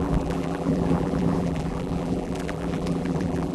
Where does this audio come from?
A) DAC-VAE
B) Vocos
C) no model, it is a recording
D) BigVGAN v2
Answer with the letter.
D